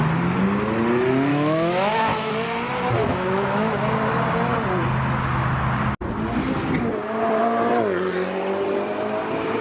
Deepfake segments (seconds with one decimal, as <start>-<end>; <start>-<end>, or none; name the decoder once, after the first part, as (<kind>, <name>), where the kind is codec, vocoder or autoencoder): 1.3-2.3 (autoencoder, DAC-VAE); 3.0-3.8